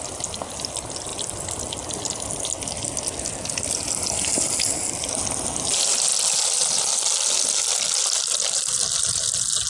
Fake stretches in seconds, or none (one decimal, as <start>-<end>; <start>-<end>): none